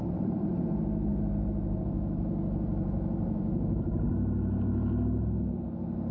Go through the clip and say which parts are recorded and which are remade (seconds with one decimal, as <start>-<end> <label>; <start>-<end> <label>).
0.0-0.5 remade; 0.5-1.1 recorded; 1.1-4.1 remade; 4.1-6.1 recorded